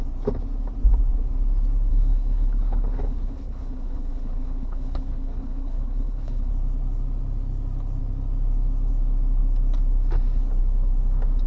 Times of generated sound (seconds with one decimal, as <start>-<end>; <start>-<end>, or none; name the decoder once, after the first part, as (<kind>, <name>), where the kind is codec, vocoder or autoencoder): 1.9-6.5 (codec, HILCodec)

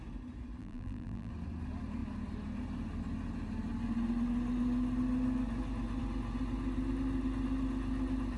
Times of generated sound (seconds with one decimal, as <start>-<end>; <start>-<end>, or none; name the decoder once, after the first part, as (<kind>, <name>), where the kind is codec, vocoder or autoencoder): 0.6-1.3 (vocoder, BigVGAN v2)

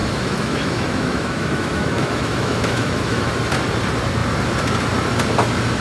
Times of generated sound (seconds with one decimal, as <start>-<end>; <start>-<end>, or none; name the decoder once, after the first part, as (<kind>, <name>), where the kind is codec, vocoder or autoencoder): 0.0-3.3 (autoencoder, DAC-VAE)

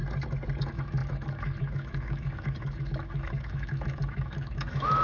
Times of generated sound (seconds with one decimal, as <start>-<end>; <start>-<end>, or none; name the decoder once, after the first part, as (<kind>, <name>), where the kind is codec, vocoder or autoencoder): 0.6-5.0 (autoencoder, DAC-VAE)

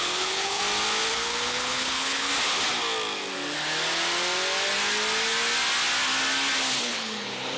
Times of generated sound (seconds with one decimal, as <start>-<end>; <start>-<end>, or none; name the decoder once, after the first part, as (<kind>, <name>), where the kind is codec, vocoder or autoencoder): 0.0-0.6 (codec, HILCodec); 1.1-2.3; 6.8-7.6